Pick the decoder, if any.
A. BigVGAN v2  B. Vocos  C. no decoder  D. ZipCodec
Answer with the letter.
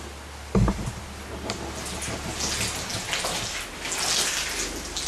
C